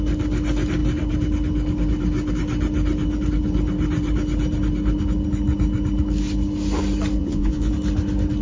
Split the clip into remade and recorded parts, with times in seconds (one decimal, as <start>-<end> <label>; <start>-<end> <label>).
0.0-7.2 recorded; 7.2-7.7 remade; 7.7-8.4 recorded